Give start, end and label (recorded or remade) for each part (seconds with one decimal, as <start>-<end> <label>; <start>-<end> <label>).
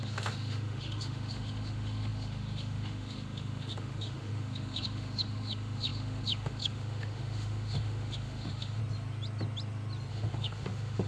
0.0-8.8 remade; 8.8-10.1 recorded; 10.1-11.1 remade